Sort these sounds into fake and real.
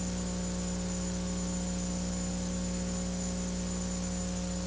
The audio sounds real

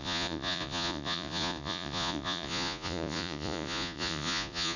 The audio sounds fake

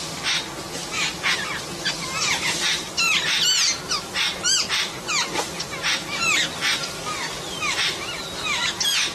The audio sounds real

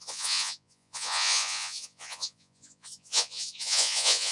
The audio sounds fake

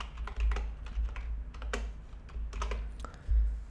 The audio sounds real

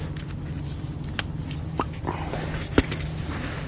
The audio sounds real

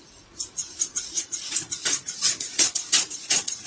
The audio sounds fake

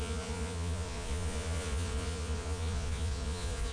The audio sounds fake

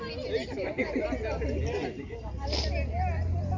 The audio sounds real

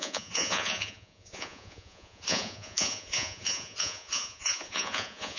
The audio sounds fake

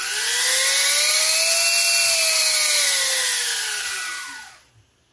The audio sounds real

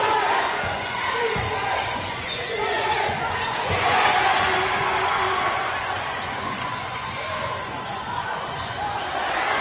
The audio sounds fake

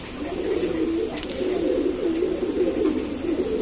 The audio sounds real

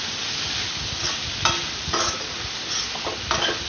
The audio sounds real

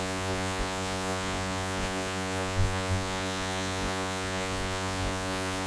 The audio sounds fake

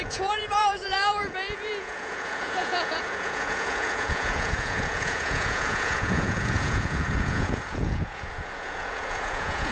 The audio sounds fake